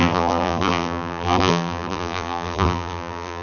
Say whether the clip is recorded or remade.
remade